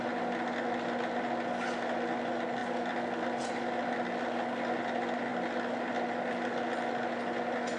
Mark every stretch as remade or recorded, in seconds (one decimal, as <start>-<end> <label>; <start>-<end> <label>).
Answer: 0.0-7.8 recorded